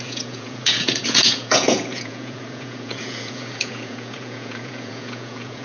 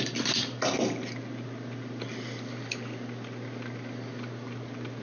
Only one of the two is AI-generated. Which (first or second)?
first